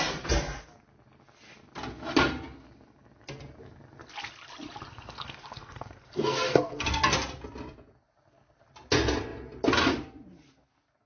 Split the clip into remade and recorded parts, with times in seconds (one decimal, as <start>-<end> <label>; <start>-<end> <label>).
0.0-4.9 recorded; 4.9-7.0 remade; 7.0-11.1 recorded